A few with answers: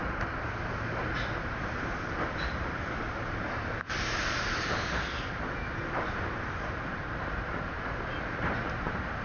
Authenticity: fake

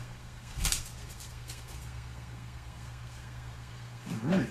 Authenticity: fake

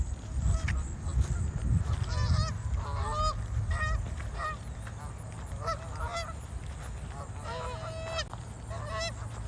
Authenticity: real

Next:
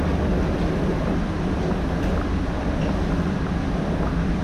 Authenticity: real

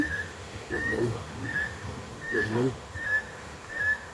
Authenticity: fake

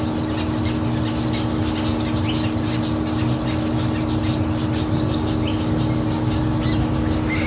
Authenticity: real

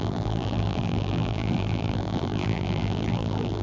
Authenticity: fake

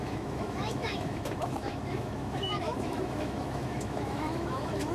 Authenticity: fake